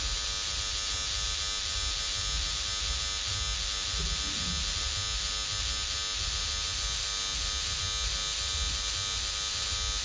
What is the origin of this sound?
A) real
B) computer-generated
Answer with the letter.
A